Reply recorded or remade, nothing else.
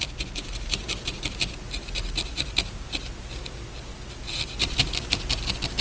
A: recorded